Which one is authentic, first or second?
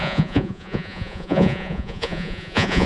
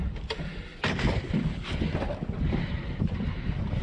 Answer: second